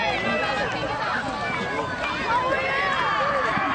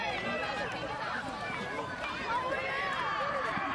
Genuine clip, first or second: first